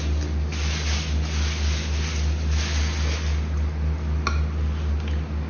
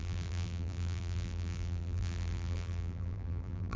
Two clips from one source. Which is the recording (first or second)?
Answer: first